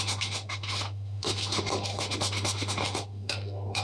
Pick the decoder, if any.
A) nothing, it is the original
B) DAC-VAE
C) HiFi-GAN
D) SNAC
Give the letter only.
B